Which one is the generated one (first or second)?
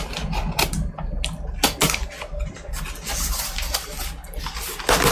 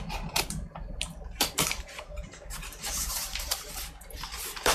second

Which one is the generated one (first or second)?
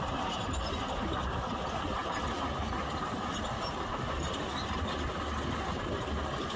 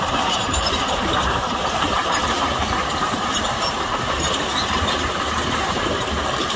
second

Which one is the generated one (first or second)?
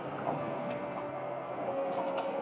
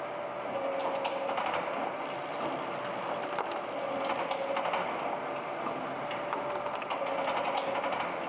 first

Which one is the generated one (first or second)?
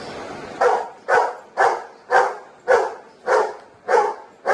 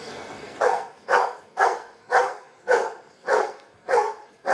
second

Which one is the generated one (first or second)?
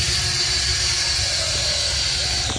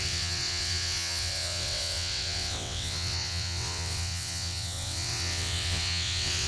second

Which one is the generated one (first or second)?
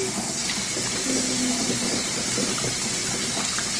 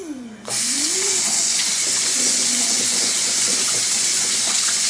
second